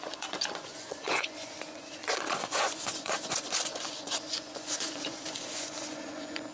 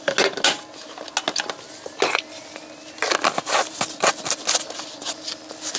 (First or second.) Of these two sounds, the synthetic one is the first